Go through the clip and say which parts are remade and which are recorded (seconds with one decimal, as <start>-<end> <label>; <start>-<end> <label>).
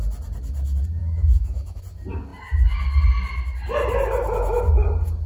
0.0-1.0 recorded; 1.0-1.8 remade; 1.8-5.3 recorded